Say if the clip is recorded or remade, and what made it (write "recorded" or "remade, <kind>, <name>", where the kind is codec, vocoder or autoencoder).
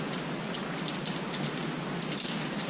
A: recorded